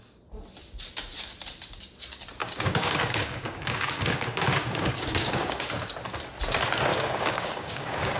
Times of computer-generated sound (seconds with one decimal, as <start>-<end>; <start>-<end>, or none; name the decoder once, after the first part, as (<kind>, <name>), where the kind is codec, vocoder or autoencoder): 2.4-5.7 (codec, DAC); 6.9-8.2